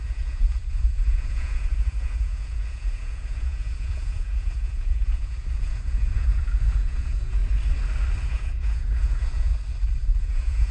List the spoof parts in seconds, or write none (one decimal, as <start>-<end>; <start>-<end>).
0.0-7.4; 8.3-9.5; 10.2-10.7